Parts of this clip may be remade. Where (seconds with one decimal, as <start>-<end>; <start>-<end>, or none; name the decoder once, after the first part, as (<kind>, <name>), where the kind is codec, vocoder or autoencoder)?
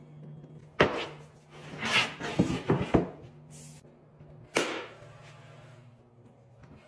none